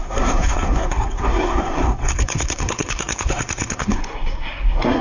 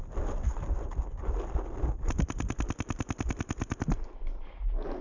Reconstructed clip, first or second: first